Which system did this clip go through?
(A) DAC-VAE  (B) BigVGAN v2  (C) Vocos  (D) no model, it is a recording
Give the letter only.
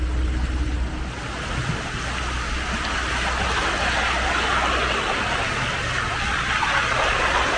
D